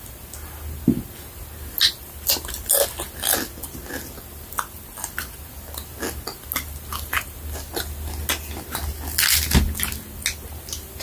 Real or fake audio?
real